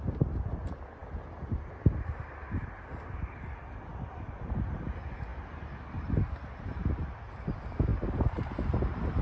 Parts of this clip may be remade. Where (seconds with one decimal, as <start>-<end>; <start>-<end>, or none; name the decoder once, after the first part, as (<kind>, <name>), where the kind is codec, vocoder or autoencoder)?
none